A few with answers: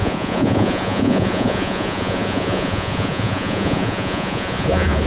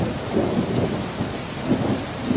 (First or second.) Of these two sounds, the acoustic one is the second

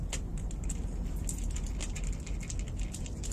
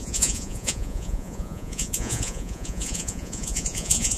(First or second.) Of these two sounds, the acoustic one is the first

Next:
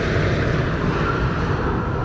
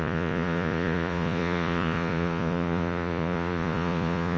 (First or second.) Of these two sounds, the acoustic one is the first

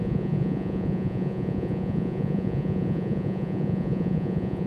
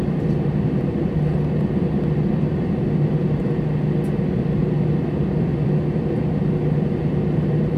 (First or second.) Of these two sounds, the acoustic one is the second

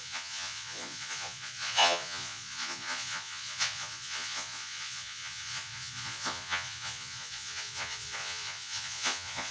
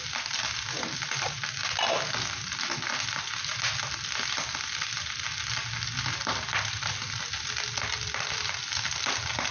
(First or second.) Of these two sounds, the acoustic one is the second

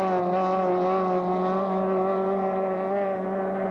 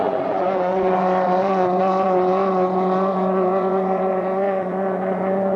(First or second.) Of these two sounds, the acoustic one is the first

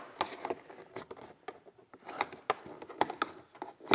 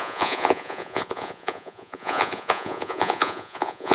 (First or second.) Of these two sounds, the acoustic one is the first